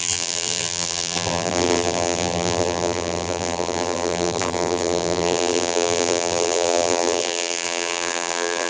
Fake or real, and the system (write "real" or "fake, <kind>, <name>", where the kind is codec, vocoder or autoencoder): fake, vocoder, BigVGAN v2